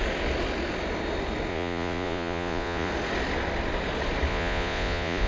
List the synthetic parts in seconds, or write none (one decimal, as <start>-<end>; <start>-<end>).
1.5-2.9; 4.3-5.3